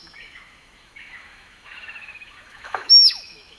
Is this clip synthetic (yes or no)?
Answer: yes